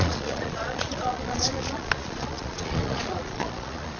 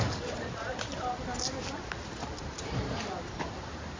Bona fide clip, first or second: second